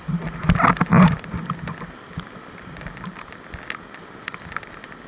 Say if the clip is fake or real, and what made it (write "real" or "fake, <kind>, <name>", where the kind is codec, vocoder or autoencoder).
real